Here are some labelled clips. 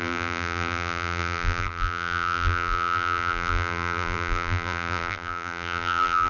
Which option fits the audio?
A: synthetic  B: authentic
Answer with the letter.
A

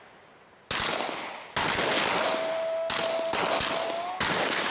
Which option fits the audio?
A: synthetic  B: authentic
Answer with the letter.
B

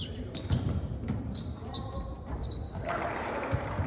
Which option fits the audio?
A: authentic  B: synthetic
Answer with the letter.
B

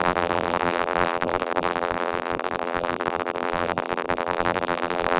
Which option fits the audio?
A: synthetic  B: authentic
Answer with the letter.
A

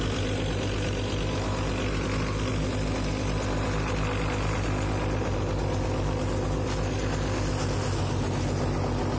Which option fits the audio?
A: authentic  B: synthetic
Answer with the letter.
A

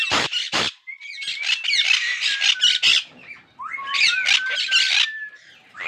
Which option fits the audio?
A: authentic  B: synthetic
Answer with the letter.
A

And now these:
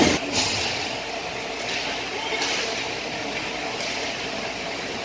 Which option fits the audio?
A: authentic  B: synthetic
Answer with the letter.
A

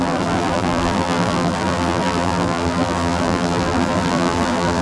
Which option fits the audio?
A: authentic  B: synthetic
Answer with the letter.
B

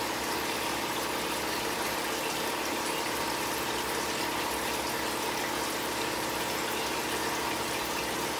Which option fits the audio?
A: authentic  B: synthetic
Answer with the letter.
A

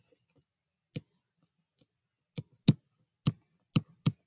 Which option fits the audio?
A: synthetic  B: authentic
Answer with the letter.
B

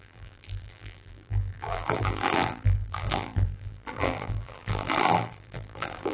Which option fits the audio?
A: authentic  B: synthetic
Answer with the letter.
B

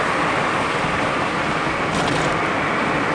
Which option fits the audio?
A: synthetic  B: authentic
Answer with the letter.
B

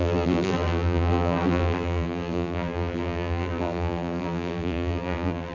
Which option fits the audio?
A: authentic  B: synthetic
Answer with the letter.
B